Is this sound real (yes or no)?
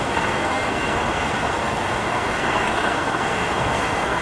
no